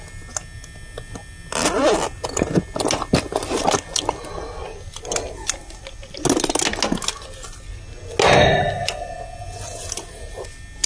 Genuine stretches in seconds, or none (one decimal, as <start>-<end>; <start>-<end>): 0.0-10.9

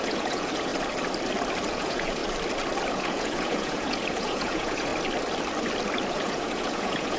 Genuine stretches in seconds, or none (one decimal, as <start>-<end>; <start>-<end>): 0.7-1.7; 2.2-2.9; 4.9-6.1

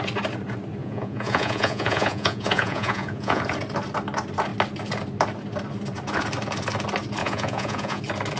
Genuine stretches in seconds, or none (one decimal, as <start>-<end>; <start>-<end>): 0.0-0.8; 3.4-7.2; 8.0-8.4

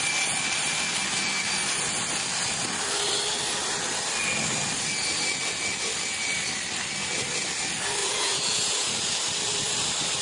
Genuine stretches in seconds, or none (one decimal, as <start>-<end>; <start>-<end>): 0.0-8.0; 9.2-10.2

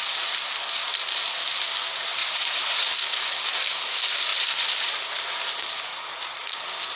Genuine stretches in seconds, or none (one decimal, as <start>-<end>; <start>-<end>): 0.0-2.2; 2.9-5.9; 6.6-7.0

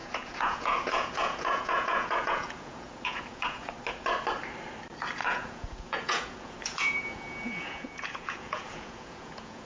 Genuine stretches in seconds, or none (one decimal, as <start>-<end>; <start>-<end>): 3.7-5.2

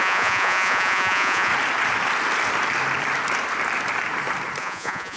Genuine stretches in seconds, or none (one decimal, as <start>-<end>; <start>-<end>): 1.5-4.6

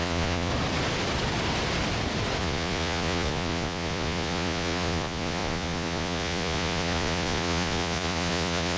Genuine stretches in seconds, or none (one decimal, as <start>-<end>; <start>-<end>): 0.5-2.4